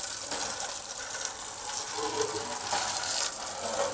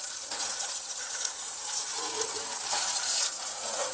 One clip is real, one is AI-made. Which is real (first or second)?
first